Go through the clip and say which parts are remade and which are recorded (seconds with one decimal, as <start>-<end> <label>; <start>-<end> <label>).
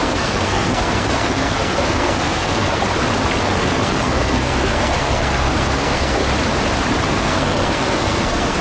0.0-2.8 remade; 2.8-3.4 recorded; 3.4-6.2 remade; 6.2-7.1 recorded; 7.1-8.6 remade